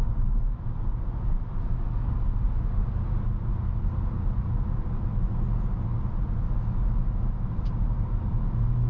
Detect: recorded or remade recorded